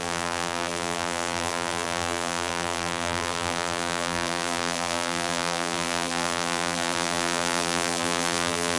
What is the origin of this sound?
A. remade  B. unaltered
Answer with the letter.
A